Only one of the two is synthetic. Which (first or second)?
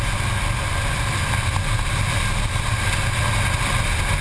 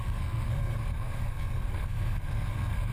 second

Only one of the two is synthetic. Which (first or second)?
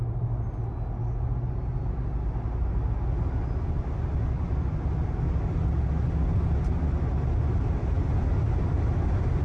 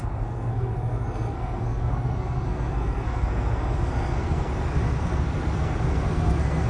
second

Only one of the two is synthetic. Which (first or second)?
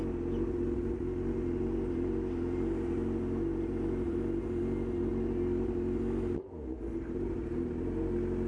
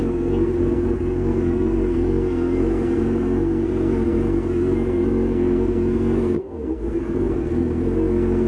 second